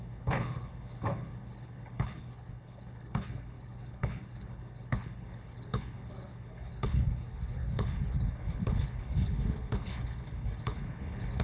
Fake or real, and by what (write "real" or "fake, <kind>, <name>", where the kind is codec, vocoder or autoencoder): fake, codec, HILCodec